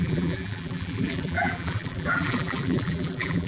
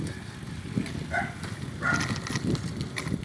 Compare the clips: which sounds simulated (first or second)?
first